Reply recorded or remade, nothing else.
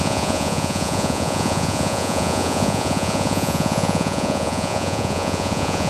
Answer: remade